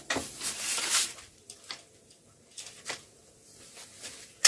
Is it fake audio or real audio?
real